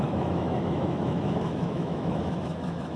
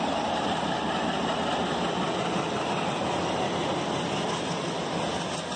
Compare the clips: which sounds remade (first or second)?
first